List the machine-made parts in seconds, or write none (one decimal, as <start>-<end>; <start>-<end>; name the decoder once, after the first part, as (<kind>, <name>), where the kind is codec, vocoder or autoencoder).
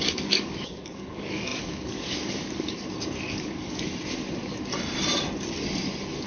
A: 0.0-3.9 (codec, DAC)